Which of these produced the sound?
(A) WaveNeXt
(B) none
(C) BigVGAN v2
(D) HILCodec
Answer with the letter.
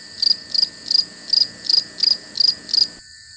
B